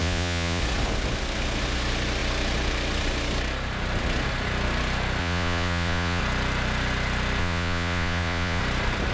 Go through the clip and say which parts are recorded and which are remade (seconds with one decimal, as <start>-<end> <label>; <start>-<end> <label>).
0.0-0.6 remade; 0.6-5.2 recorded; 5.2-6.2 remade; 6.2-7.4 recorded; 7.4-8.6 remade; 8.6-9.1 recorded